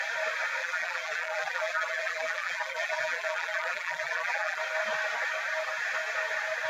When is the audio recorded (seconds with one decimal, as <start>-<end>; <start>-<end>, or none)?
0.0-0.6; 4.6-6.7

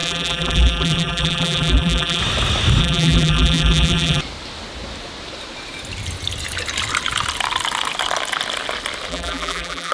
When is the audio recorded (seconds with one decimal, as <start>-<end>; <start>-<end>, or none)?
2.2-2.8; 4.2-9.1